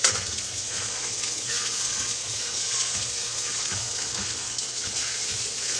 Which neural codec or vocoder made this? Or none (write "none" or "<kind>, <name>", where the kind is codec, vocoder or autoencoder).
codec, SNAC